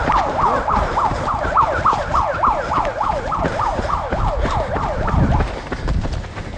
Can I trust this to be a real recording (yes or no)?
yes